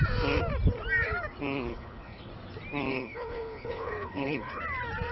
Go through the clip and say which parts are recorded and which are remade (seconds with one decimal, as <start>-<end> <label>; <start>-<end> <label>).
0.0-1.7 recorded; 1.7-2.3 remade; 2.3-2.9 recorded; 2.9-4.6 remade; 4.6-5.1 recorded